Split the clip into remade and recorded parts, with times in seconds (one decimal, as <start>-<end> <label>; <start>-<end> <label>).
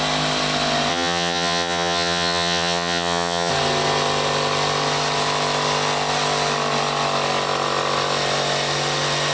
0.0-0.9 recorded; 0.9-3.5 remade; 3.5-9.3 recorded